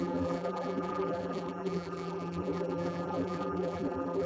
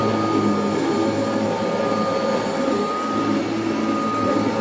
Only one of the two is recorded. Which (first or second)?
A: second